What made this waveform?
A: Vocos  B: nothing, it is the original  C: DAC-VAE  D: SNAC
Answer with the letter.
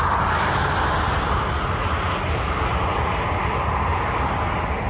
B